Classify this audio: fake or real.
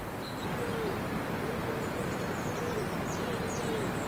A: real